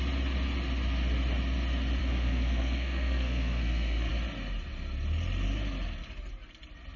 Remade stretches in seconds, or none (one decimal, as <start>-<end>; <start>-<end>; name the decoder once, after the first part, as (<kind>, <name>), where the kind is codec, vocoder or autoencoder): 2.0-4.1 (codec, SNAC)